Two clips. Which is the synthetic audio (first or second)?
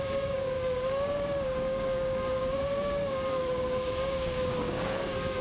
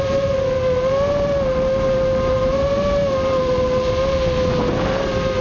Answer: first